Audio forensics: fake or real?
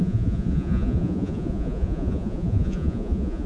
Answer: fake